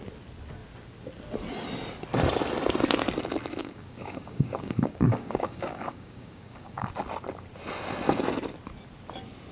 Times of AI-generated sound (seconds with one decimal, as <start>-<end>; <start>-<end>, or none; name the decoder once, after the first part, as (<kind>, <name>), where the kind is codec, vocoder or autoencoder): 3.6-6.9 (codec, DAC)